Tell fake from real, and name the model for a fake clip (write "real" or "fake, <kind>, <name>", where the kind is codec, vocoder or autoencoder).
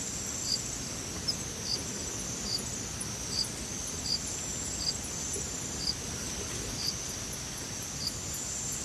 real